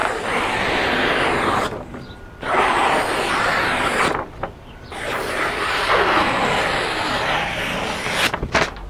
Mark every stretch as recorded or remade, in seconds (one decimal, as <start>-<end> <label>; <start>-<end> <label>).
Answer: 0.0-8.9 recorded